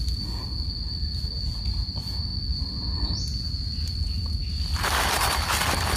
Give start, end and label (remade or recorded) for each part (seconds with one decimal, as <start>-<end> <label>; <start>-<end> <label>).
0.0-6.0 recorded